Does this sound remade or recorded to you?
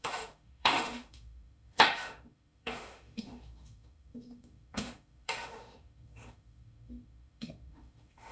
remade